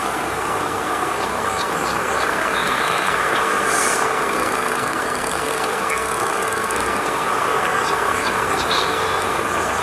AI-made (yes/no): yes